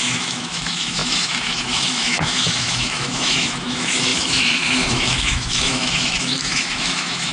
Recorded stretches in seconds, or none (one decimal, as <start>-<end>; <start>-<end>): none